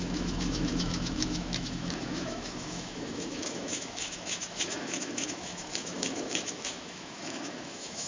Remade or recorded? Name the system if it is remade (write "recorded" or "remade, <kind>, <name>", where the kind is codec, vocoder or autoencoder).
remade, autoencoder, DAC-VAE